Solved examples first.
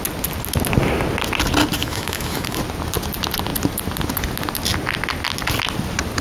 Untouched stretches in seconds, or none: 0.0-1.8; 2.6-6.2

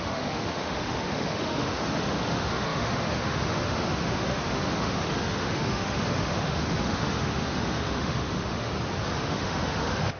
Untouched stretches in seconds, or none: 8.7-9.2

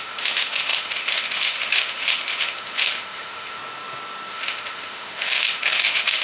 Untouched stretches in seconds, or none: 3.6-4.3

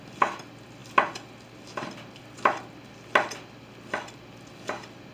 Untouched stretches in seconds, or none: 0.0-5.1